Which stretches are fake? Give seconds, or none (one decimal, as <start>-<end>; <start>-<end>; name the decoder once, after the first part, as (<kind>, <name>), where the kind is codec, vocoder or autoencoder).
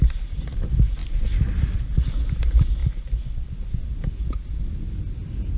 none